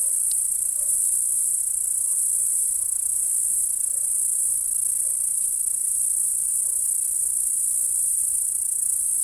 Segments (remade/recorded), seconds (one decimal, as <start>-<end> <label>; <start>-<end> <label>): 0.0-0.9 recorded; 0.9-1.6 remade; 1.6-9.2 recorded